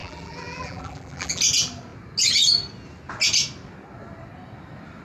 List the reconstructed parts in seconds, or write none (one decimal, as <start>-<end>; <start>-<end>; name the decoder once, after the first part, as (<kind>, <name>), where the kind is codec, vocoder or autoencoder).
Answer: 0.0-1.4 (vocoder, BigVGAN v2)